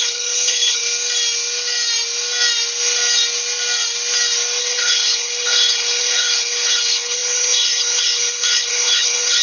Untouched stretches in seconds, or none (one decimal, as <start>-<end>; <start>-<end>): 0.8-4.6